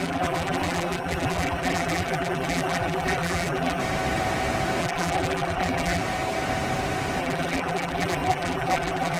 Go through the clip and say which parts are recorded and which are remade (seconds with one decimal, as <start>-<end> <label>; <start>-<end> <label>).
0.0-3.8 remade; 3.8-4.8 recorded; 4.8-6.0 remade; 6.0-7.2 recorded; 7.2-9.2 remade